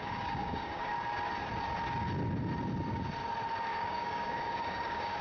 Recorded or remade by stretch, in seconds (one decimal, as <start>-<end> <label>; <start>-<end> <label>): 0.0-0.9 remade; 0.9-3.6 recorded; 3.6-5.2 remade